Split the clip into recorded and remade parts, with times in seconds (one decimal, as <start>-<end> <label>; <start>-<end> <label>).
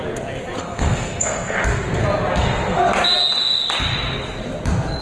0.0-0.6 recorded; 0.6-2.0 remade; 2.0-2.4 recorded; 2.4-2.9 remade; 2.9-5.0 recorded